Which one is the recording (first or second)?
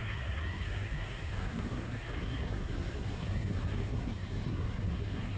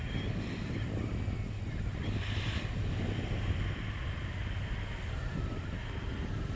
second